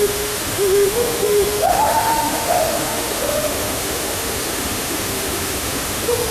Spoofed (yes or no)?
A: yes